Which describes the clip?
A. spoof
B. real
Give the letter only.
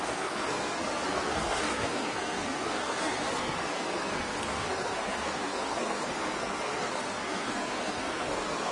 A